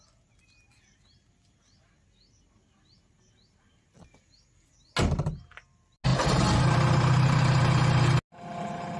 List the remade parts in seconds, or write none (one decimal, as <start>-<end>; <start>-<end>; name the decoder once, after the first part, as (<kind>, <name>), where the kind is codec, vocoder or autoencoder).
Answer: none